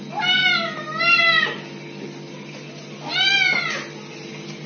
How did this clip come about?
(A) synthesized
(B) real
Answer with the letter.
B